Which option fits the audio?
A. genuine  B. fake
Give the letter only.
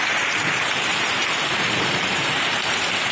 B